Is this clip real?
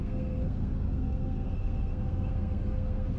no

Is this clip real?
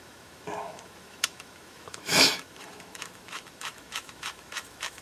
no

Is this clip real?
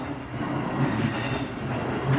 yes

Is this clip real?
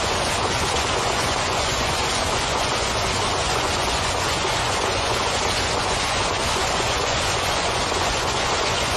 no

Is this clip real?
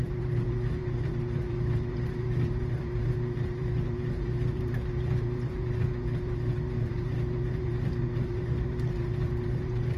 no